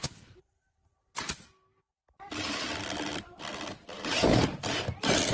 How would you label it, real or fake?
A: real